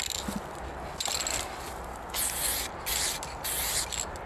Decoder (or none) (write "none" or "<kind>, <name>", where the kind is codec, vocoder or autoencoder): none